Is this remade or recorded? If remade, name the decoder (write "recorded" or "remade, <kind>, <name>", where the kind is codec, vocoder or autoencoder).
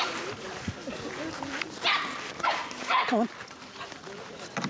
recorded